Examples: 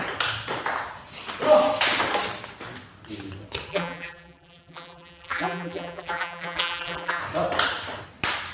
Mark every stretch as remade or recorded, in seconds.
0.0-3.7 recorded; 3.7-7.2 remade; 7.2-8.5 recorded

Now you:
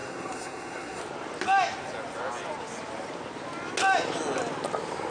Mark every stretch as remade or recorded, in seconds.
0.0-1.0 remade; 1.0-5.1 recorded

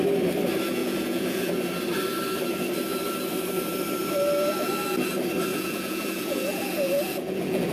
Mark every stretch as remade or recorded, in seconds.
0.0-0.8 recorded; 0.8-1.5 remade; 1.5-5.5 recorded; 5.5-7.7 remade